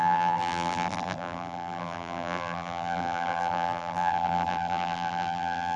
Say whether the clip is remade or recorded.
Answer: remade